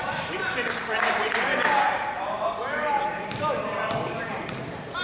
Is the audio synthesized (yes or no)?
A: yes